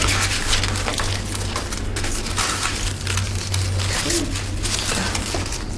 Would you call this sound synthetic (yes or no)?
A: no